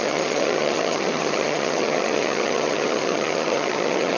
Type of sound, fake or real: fake